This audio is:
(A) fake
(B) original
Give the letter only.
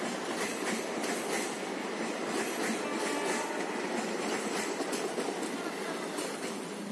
B